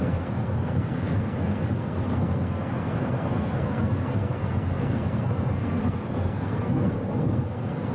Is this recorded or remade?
remade